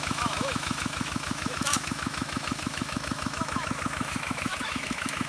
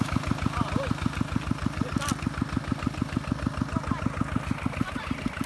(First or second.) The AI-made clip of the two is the first